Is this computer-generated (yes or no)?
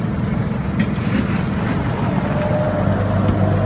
no